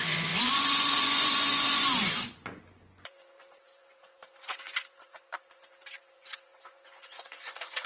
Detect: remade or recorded remade